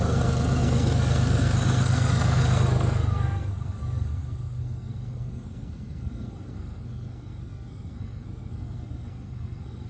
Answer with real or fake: fake